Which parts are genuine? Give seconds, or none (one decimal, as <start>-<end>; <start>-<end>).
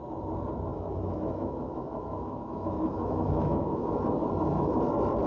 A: 0.0-0.7; 3.9-5.3